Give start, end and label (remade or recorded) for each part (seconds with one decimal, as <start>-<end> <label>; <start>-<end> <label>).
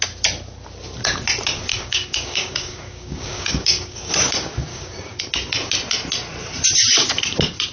0.0-1.7 recorded; 1.7-4.1 remade; 4.1-4.7 recorded; 4.7-5.2 remade; 5.2-7.7 recorded